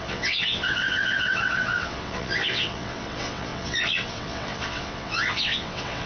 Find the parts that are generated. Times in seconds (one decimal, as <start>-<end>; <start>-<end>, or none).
0.0-6.1